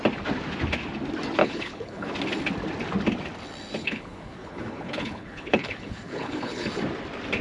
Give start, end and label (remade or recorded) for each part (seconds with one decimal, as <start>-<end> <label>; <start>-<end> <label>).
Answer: 0.0-1.4 recorded; 1.4-2.1 remade; 2.1-3.8 recorded; 3.8-6.7 remade; 6.7-7.4 recorded